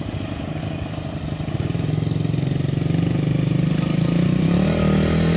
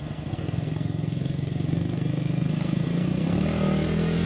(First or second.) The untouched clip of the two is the first